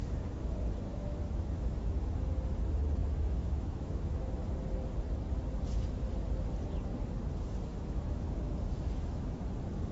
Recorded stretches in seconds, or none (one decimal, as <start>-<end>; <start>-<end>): 0.0-0.9; 2.1-3.0; 4.0-7.7; 9.4-9.9